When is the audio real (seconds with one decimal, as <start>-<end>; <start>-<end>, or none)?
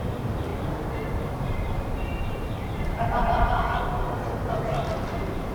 0.0-0.5; 3.8-5.5